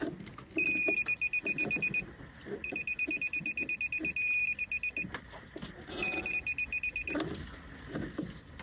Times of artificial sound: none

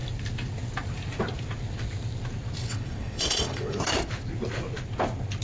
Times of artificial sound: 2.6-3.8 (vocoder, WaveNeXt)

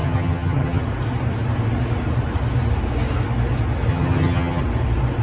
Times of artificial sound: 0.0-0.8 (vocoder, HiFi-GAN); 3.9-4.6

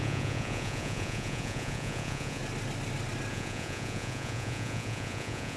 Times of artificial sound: 0.0-2.4 (vocoder, Vocos); 3.3-5.6